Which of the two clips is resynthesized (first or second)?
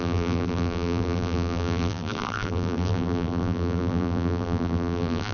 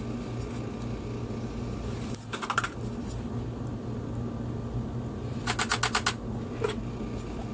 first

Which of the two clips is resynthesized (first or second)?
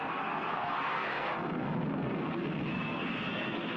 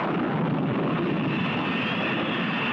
first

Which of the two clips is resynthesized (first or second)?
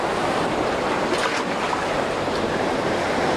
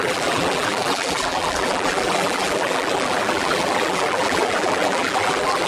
second